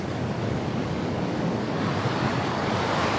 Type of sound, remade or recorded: remade